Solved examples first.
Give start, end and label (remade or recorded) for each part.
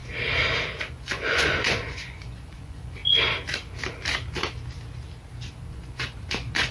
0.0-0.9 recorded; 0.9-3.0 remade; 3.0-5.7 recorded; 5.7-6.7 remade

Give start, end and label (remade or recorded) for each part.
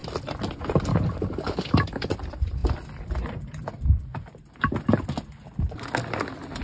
0.0-0.9 recorded; 0.9-2.1 remade; 2.1-6.6 recorded